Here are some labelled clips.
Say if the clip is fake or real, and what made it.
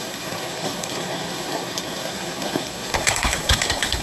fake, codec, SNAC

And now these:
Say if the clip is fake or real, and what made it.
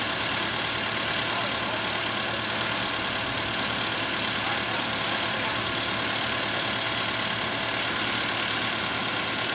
real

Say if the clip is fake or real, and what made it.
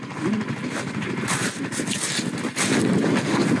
real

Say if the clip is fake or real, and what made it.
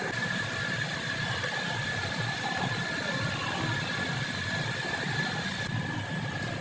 real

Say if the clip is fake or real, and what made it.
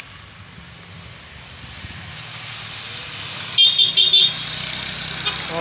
real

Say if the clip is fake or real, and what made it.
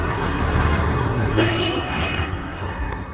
fake, codec, SNAC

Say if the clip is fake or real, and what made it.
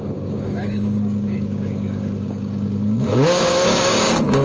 fake, codec, DAC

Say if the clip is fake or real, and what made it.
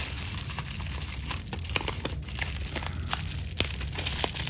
real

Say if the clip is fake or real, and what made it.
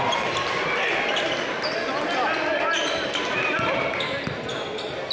real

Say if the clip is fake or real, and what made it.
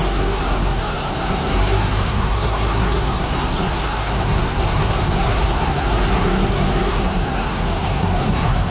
fake, codec, SNAC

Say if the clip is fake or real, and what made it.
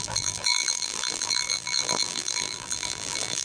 fake, vocoder, BigVGAN v2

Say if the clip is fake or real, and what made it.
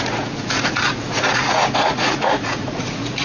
fake, vocoder, Vocos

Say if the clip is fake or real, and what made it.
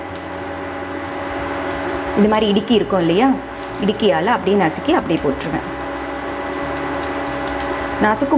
real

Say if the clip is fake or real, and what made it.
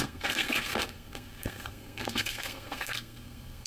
fake, codec, SNAC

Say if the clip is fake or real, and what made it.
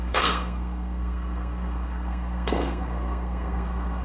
fake, codec, SNAC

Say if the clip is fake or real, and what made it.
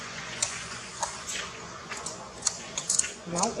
fake, vocoder, Vocos